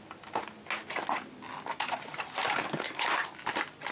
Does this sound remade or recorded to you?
recorded